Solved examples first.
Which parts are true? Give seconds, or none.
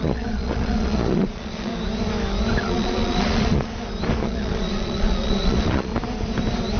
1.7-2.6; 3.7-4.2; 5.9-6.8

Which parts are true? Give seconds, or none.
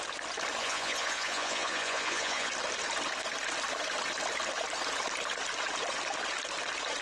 0.0-0.6; 2.5-7.0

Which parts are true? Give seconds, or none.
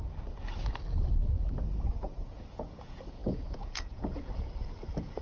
0.0-1.9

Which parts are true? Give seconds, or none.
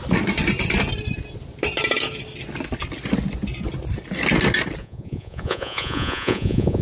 0.0-4.8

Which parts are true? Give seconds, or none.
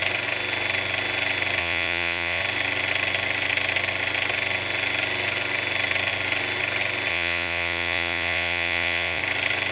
0.0-1.6; 2.4-7.1; 9.2-9.7